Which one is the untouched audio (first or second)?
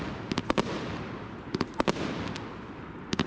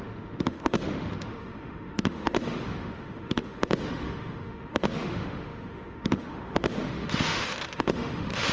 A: first